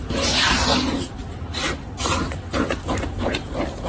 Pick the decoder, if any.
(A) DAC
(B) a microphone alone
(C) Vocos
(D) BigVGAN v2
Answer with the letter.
D